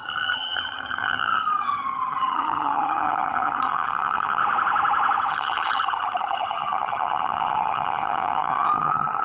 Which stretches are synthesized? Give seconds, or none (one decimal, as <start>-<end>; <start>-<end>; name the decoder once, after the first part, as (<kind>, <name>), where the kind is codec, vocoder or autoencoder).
0.0-4.4 (vocoder, HiFi-GAN); 5.3-9.2